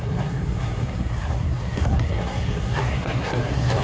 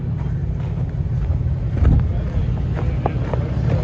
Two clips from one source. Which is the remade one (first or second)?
first